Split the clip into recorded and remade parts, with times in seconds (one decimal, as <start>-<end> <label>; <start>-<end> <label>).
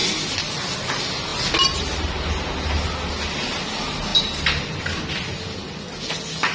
0.0-6.5 recorded